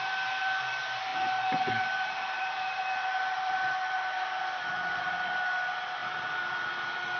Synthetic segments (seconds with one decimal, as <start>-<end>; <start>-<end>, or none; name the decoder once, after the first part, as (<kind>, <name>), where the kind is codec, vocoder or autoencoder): 1.1-5.0 (vocoder, BigVGAN v2)